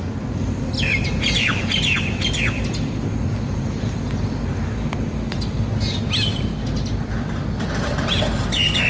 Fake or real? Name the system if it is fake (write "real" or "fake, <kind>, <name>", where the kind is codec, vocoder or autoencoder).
real